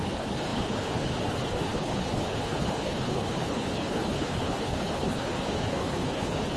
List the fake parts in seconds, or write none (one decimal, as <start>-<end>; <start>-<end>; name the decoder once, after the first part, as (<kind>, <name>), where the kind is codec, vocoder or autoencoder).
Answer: 0.0-6.6 (codec, HILCodec)